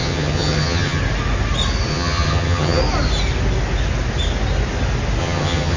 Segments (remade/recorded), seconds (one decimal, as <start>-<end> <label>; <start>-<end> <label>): 0.0-1.0 remade; 1.0-1.9 recorded; 1.9-2.8 remade; 2.8-5.2 recorded; 5.2-5.8 remade